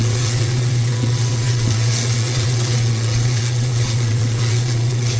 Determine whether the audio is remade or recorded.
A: remade